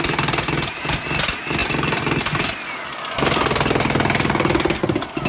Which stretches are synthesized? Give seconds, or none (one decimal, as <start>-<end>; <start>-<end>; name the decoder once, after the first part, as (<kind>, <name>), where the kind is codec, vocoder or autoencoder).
none